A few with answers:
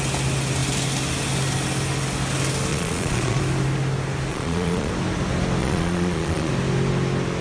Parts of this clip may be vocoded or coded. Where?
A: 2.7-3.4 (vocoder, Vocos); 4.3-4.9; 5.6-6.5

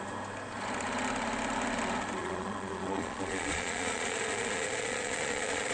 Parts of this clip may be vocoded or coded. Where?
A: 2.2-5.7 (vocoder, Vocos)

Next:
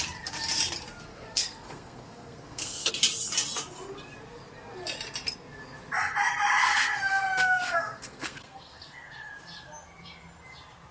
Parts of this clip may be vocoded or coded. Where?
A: 1.1-2.9 (codec, SNAC); 6.6-9.3

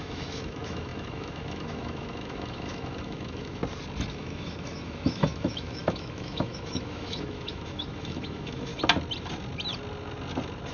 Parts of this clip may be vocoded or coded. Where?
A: 0.0-3.6 (autoencoder, DAC-VAE); 4.1-8.7

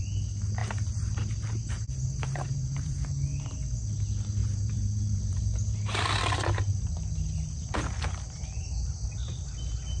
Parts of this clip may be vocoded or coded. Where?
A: 0.6-3.0 (vocoder, BigVGAN v2); 4.4-5.4